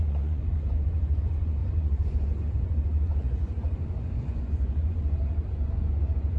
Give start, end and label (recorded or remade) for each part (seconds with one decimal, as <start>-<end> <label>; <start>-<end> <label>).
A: 0.0-6.4 remade